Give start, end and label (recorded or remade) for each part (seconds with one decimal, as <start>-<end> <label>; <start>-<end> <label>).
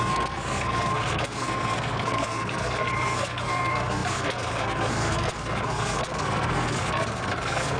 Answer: 0.0-7.8 remade